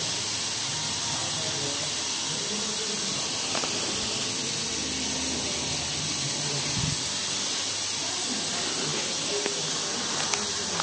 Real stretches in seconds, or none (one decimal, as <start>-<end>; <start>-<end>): 0.0-10.8